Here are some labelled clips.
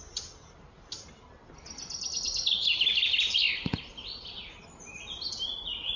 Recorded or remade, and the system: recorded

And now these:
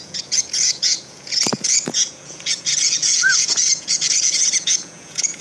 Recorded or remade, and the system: remade, vocoder, Vocos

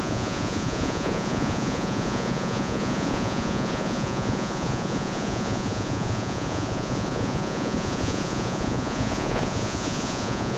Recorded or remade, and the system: remade, vocoder, Vocos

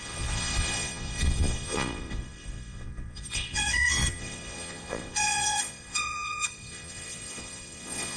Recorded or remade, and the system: remade, vocoder, Vocos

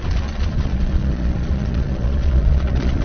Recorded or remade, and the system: remade, vocoder, Vocos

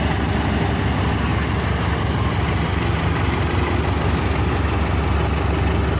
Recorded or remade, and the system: recorded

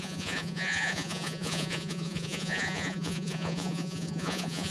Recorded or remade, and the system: remade, vocoder, Vocos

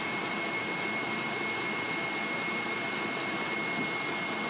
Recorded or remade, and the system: recorded